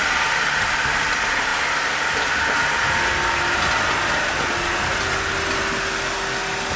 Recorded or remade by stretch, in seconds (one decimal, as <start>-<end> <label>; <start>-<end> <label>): 0.0-6.8 recorded